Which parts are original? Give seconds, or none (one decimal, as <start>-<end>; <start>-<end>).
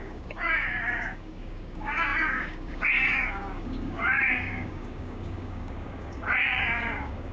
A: none